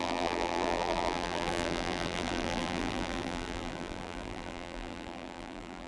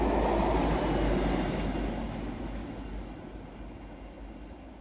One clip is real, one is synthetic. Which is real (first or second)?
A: second